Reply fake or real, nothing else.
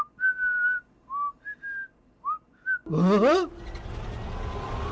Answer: real